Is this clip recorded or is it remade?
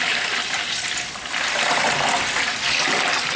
recorded